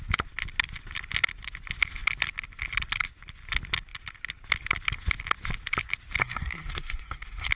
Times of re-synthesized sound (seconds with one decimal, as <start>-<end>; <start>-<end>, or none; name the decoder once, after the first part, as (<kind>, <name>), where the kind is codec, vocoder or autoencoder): 6.2-7.5 (codec, SNAC)